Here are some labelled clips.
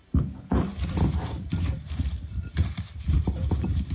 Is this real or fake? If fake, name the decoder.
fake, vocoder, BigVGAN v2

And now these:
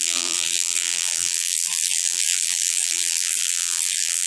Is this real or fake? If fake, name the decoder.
fake, vocoder, BigVGAN v2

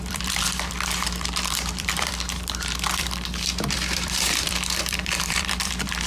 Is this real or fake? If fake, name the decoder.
fake, vocoder, BigVGAN v2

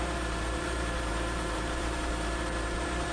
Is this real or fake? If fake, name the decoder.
fake, vocoder, BigVGAN v2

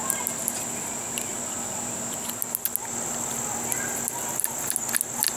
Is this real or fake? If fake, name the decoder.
real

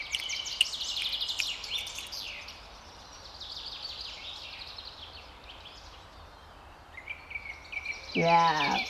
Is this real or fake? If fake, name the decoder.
real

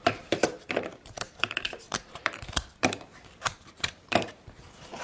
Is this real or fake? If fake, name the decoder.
fake, vocoder, BigVGAN v2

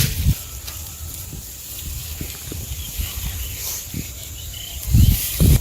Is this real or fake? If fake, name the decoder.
fake, vocoder, BigVGAN v2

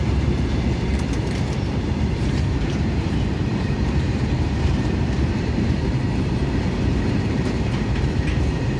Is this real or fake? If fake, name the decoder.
fake, vocoder, BigVGAN v2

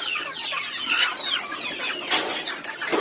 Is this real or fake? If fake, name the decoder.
fake, vocoder, BigVGAN v2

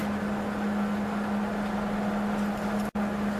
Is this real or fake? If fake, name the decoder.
real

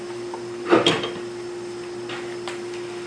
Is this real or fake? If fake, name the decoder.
real